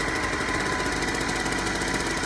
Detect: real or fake real